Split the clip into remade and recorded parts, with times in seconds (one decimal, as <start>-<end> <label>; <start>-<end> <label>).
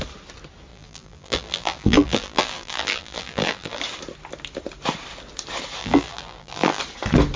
0.0-0.7 recorded; 0.7-3.8 remade; 3.8-5.8 recorded; 5.8-6.8 remade; 6.8-7.4 recorded